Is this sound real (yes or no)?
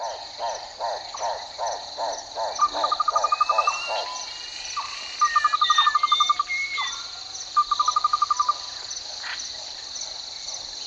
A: no